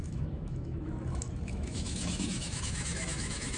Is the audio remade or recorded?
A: remade